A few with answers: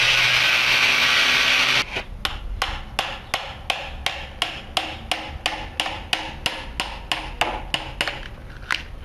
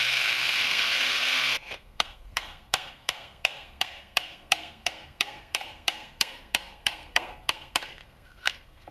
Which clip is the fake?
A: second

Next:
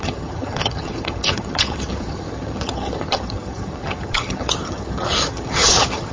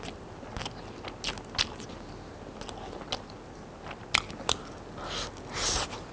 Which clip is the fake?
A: first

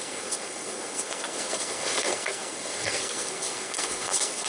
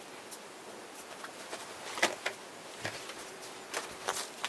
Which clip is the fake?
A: first